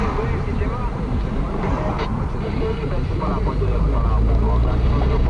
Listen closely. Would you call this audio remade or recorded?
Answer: recorded